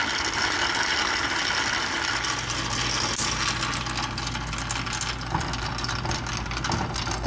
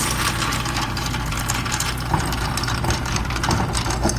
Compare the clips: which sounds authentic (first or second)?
first